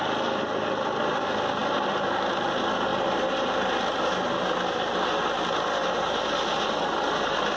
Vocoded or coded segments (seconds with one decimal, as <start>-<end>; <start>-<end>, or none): none

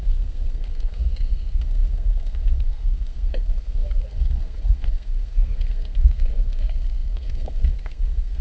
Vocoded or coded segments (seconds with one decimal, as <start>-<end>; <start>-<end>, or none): 0.0-8.4

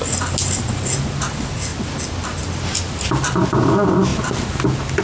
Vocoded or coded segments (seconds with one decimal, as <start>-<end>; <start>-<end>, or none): none

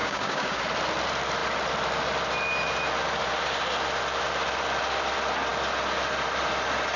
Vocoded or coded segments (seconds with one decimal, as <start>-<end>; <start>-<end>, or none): 0.0-0.6